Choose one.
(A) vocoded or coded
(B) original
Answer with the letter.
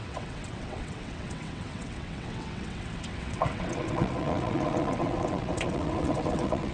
A